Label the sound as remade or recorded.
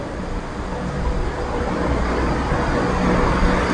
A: recorded